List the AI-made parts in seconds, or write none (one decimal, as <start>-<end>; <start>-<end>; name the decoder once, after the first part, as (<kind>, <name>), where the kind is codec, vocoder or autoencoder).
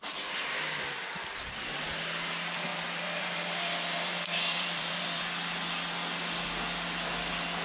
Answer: 2.7-5.2 (vocoder, BigVGAN v2)